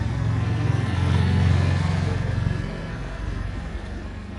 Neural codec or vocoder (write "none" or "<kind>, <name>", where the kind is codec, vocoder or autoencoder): codec, SNAC